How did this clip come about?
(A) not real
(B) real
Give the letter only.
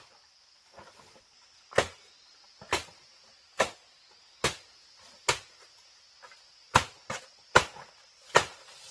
B